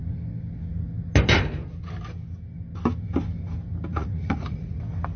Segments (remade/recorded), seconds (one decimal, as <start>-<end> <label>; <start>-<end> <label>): 0.0-3.9 recorded; 3.9-4.8 remade; 4.8-5.2 recorded

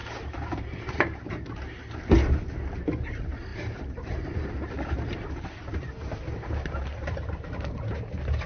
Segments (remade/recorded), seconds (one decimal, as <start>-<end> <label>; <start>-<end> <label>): 0.0-1.8 remade; 1.8-3.5 recorded; 3.5-7.1 remade; 7.1-8.5 recorded

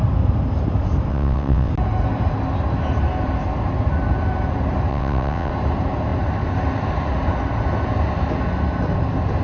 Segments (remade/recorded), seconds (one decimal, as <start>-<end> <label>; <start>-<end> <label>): 0.0-1.1 recorded; 1.1-1.7 remade; 1.7-4.9 recorded; 4.9-5.5 remade; 5.5-9.4 recorded

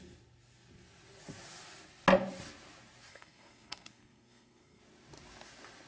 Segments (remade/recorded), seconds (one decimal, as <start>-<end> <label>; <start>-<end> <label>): 0.0-3.1 recorded; 3.1-4.8 remade; 4.8-5.9 recorded

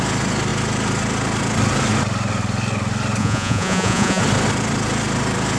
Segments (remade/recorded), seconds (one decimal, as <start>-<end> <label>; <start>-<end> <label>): 0.0-3.2 recorded; 3.2-4.2 remade; 4.2-5.6 recorded

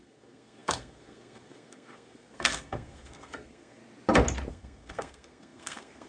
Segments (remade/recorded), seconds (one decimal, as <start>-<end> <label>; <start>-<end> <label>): 0.0-3.8 remade; 3.8-4.5 recorded; 4.5-6.1 remade